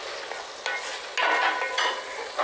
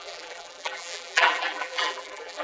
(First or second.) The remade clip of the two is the second